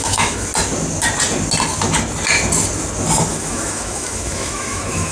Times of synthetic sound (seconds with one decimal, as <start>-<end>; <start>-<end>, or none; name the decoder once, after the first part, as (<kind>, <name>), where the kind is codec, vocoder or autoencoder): 0.0-0.5 (autoencoder, DAC-VAE); 3.3-5.1